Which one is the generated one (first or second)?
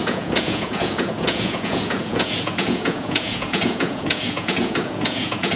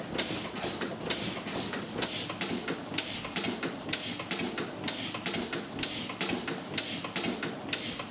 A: first